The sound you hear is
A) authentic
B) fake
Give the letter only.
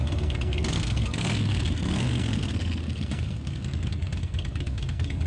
B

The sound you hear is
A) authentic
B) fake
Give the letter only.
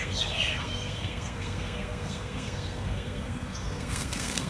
B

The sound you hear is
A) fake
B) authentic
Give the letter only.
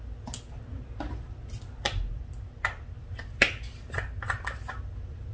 B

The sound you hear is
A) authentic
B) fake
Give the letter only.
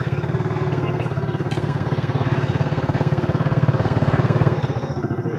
B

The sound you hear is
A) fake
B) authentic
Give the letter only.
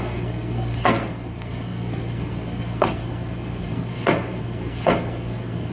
A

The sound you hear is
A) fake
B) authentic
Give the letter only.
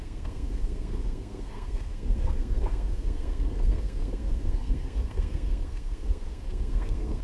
A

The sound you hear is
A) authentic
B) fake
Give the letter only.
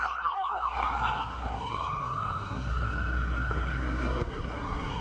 B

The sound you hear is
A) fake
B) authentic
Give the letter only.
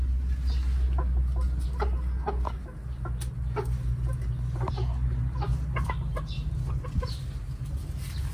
B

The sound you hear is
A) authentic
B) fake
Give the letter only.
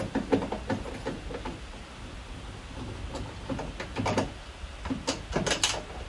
A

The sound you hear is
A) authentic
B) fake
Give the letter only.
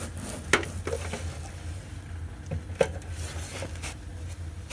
A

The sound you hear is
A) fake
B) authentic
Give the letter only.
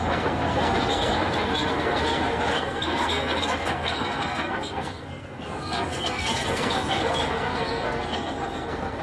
A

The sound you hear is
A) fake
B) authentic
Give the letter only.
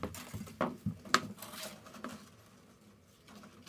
B